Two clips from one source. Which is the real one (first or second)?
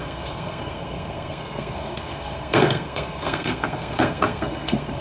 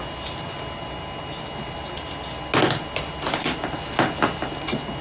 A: second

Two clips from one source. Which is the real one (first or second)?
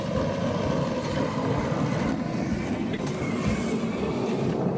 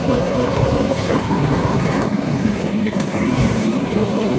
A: first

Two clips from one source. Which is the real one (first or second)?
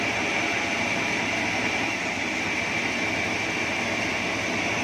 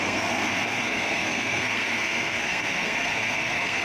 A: first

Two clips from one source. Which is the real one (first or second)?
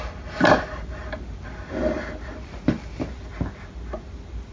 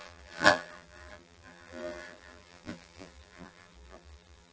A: first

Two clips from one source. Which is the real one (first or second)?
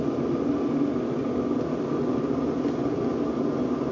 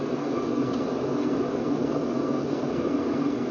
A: first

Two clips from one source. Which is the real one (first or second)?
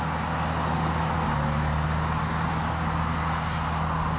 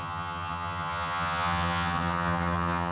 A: first